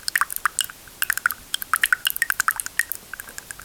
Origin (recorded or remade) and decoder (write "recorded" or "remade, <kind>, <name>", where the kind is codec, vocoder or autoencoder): recorded